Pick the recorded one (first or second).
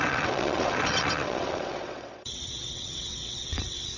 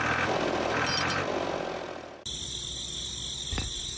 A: second